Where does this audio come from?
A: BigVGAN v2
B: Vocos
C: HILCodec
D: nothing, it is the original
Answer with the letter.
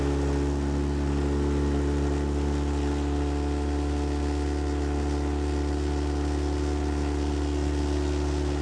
D